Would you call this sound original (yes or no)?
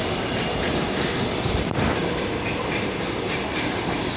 no